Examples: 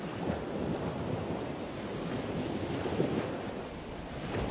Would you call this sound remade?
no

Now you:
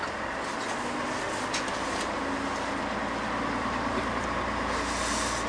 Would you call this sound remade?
no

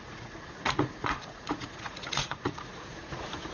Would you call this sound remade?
yes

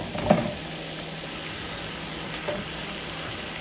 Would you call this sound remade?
no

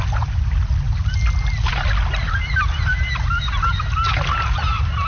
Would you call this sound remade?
no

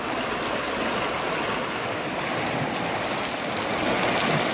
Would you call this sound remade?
no